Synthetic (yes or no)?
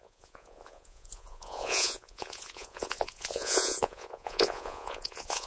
yes